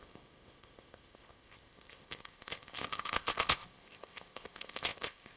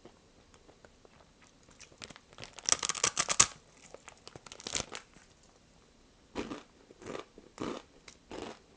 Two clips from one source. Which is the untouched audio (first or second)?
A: second